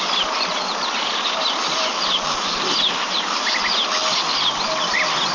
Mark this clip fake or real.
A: fake